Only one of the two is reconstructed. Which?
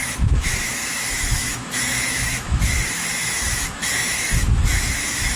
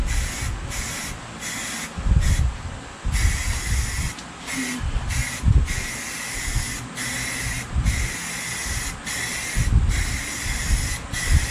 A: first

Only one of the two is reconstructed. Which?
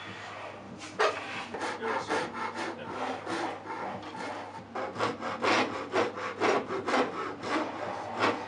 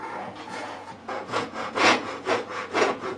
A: second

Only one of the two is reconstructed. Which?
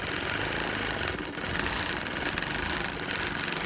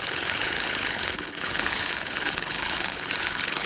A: second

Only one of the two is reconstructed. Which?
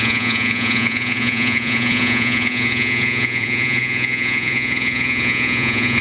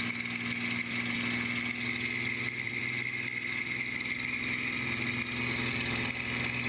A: first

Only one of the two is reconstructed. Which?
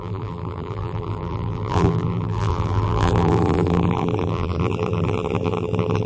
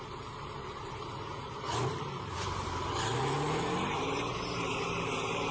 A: first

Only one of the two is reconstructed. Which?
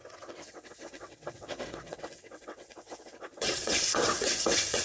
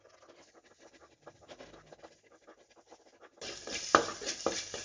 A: first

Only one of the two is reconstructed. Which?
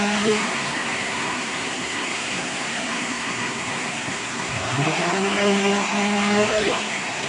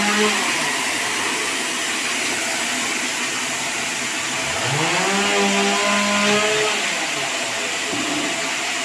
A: first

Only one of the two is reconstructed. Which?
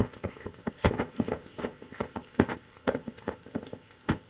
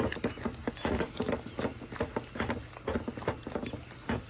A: first